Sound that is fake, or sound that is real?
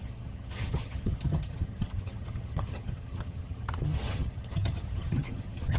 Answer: fake